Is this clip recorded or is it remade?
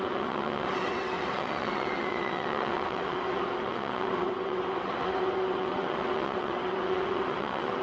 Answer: remade